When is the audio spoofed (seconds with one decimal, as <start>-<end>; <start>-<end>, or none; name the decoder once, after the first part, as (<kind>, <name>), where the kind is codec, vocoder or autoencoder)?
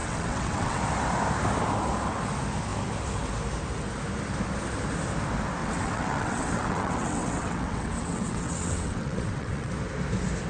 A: 0.0-0.8 (vocoder, WaveNeXt); 5.6-9.7